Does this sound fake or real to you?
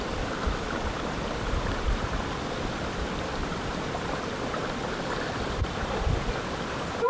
fake